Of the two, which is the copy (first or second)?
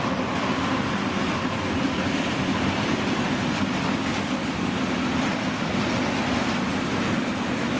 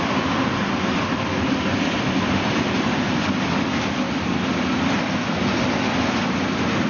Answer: first